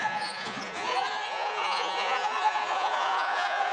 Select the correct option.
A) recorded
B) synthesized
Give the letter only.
B